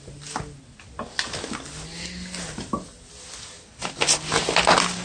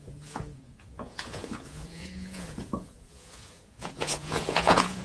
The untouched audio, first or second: first